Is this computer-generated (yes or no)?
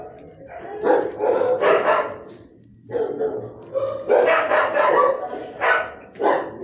no